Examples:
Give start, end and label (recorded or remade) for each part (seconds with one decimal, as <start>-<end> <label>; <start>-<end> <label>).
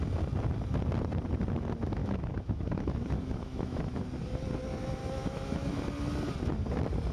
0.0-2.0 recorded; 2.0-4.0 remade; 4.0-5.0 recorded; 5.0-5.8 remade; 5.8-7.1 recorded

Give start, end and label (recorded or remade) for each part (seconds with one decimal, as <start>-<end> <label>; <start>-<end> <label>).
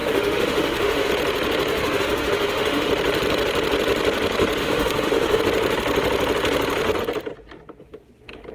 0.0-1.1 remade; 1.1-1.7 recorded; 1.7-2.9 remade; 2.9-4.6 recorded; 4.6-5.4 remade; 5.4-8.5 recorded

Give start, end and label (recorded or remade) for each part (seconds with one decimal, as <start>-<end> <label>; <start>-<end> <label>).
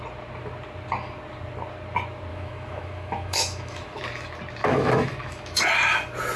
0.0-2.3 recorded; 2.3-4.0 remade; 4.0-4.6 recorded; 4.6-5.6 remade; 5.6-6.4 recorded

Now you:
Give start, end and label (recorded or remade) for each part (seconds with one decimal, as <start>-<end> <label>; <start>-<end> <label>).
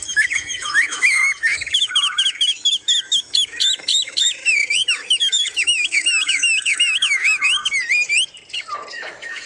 0.0-7.6 remade; 7.6-8.9 recorded; 8.9-9.5 remade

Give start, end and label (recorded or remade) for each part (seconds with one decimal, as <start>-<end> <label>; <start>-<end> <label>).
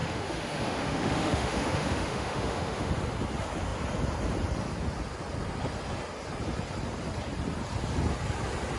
0.0-2.9 remade; 2.9-8.8 recorded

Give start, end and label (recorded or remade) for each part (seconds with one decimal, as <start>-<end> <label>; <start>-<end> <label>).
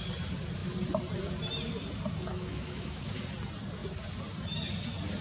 0.0-2.3 recorded; 2.3-3.2 remade; 3.2-5.2 recorded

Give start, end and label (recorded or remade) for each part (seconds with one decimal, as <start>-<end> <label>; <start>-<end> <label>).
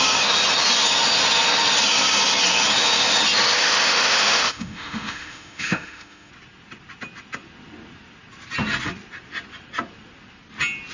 0.0-3.6 recorded; 3.6-6.3 remade; 6.3-10.9 recorded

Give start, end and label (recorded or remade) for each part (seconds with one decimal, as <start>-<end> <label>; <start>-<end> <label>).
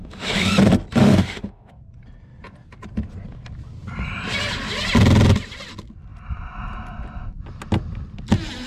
0.0-0.5 remade; 0.5-1.0 recorded; 1.0-1.7 remade; 1.7-8.7 recorded